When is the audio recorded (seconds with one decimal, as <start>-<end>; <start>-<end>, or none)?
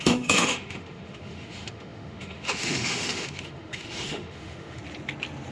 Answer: 4.8-5.5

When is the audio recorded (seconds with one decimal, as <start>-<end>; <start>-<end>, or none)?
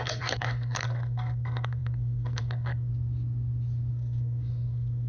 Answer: 2.9-3.9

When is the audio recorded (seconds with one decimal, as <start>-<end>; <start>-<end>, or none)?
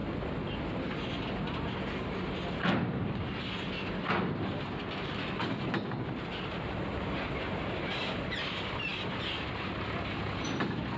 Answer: 0.0-11.0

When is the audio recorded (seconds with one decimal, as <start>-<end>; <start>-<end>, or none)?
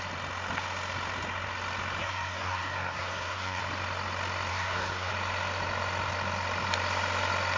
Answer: 0.0-2.0; 3.6-4.5; 5.1-7.6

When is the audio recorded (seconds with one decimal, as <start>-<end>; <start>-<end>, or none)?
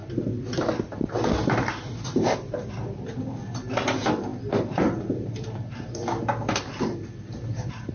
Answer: 0.0-7.9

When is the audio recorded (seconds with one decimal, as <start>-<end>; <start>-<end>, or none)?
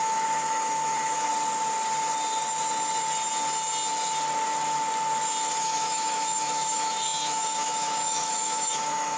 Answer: 1.3-5.6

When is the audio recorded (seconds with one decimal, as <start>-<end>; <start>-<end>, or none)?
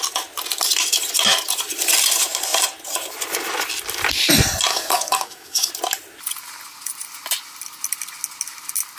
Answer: 0.0-4.7; 5.7-9.0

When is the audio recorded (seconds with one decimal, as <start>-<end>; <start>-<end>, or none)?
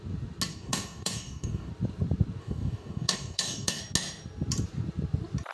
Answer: 0.0-0.5; 1.7-2.4; 3.8-5.5